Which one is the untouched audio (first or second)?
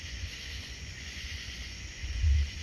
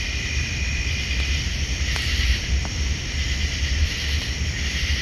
second